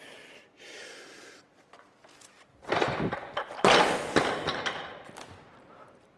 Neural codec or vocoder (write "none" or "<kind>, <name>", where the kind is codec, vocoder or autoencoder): none